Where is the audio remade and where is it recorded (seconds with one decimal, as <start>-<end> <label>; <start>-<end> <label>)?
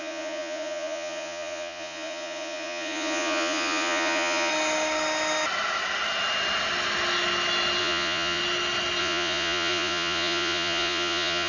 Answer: 0.0-4.5 remade; 4.5-7.8 recorded; 7.8-8.4 remade; 8.4-9.0 recorded; 9.0-11.5 remade